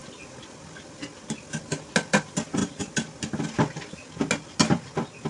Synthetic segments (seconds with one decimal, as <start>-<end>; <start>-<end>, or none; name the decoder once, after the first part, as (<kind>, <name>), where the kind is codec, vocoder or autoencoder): 2.6-3.2 (vocoder, BigVGAN v2)